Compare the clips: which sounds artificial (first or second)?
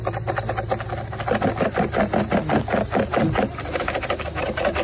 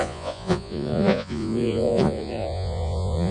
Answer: second